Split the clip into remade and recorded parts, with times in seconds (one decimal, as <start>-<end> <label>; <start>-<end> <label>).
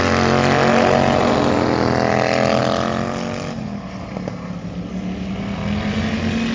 0.0-6.5 recorded